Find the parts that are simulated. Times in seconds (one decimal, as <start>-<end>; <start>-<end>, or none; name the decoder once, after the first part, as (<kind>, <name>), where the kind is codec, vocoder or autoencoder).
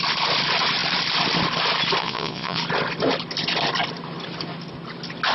2.0-2.6 (vocoder, Vocos)